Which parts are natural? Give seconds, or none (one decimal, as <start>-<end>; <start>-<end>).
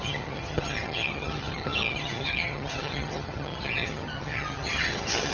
none